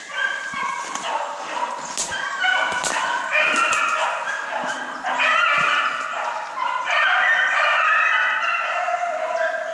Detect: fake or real real